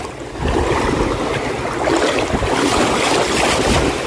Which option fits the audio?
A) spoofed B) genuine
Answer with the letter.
B